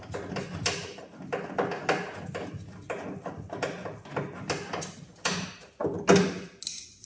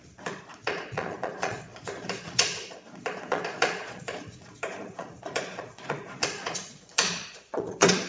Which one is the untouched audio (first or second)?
first